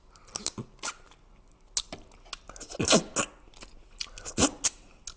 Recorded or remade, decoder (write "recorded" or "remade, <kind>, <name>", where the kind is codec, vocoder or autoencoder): recorded